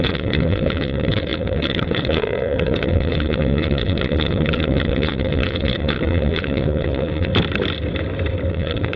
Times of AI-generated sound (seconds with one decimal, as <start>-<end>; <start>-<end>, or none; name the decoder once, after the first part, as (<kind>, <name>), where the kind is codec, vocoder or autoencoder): 0.0-7.3 (vocoder, WaveNeXt); 8.5-9.0